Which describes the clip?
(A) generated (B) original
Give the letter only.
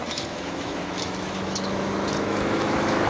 A